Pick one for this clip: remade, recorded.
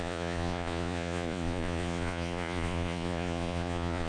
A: remade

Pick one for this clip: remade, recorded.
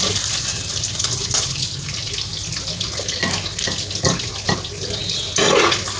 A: recorded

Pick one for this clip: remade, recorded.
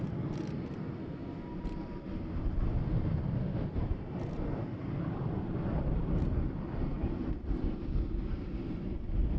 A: recorded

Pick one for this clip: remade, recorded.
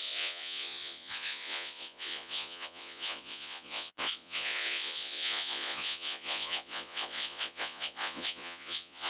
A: remade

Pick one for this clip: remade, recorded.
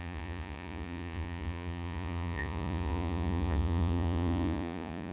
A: remade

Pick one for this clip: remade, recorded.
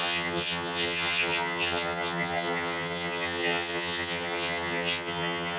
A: remade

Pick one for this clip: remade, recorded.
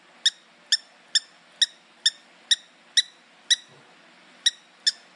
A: recorded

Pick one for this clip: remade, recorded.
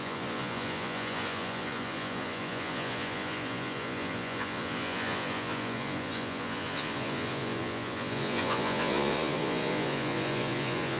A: remade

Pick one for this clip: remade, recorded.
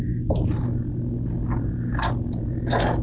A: recorded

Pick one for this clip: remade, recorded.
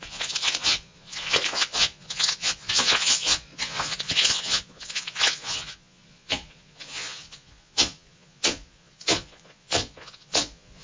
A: remade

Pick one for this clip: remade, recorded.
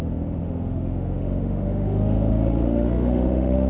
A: remade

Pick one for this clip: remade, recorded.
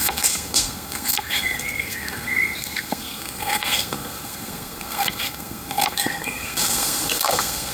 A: remade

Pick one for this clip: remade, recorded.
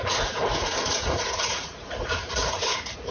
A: remade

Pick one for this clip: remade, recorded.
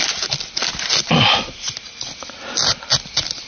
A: recorded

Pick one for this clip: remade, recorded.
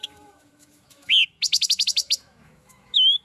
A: remade